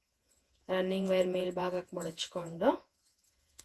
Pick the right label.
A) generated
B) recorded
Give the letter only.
A